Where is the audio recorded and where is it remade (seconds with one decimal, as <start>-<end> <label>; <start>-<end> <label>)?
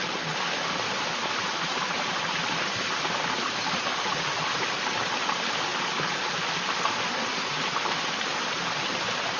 0.0-9.4 recorded